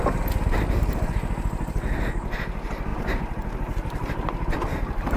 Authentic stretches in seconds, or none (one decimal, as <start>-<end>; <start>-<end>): 0.0-5.2